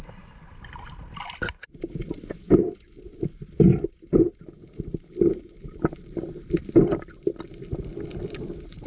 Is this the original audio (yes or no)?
yes